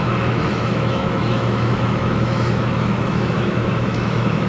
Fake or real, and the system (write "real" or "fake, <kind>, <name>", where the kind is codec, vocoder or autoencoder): fake, autoencoder, DAC-VAE